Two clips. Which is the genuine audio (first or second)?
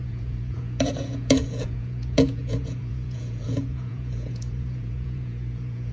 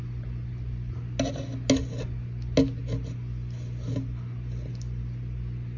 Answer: second